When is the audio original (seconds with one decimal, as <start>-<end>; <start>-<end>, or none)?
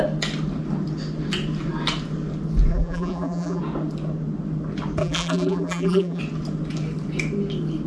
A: 0.0-2.7; 3.6-5.0; 6.2-7.9